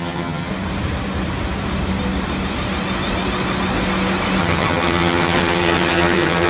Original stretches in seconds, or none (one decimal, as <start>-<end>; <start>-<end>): 0.5-4.4